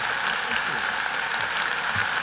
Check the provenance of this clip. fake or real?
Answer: real